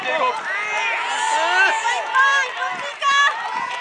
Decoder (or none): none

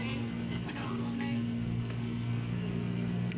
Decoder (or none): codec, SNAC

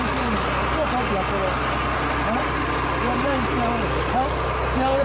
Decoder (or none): none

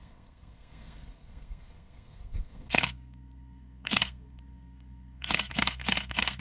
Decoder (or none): codec, SNAC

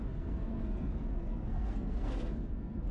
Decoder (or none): codec, SNAC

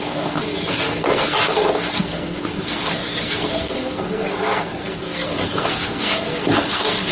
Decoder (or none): codec, SNAC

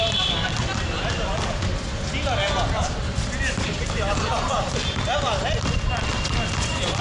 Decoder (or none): none